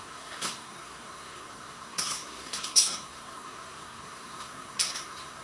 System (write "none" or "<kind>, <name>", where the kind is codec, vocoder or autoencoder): codec, SNAC